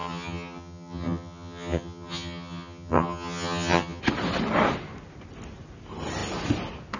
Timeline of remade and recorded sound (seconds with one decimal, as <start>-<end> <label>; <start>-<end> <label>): 0.0-4.0 remade; 4.0-7.0 recorded